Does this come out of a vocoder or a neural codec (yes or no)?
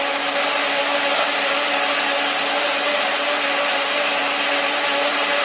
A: no